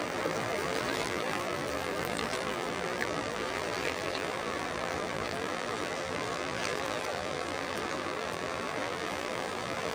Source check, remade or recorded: remade